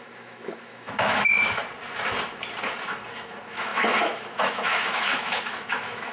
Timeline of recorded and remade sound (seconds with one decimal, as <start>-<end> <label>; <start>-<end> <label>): 0.0-1.6 remade; 1.6-3.1 recorded; 3.1-6.1 remade